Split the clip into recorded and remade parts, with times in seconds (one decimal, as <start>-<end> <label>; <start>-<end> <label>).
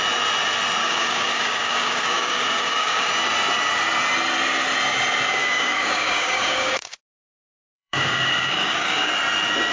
0.0-0.8 recorded; 0.8-3.1 remade; 3.1-5.4 recorded; 5.4-9.1 remade; 9.1-9.7 recorded